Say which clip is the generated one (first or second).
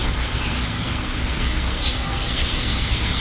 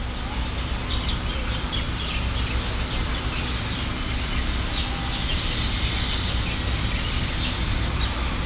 first